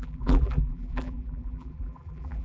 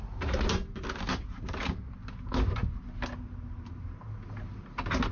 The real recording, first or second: second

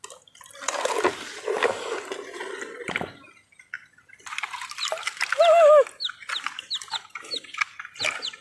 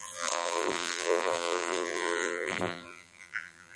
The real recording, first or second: first